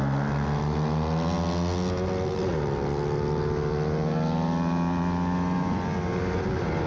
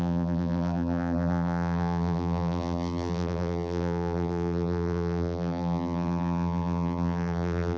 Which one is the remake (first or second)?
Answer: second